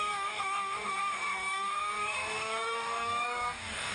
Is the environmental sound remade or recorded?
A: remade